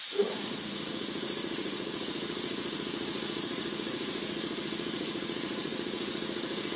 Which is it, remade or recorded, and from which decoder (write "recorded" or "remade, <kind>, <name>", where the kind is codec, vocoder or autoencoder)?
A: remade, vocoder, Vocos